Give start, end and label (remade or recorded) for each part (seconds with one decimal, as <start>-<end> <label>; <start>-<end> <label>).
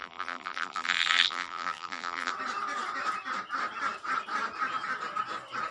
0.0-2.3 remade; 2.3-5.7 recorded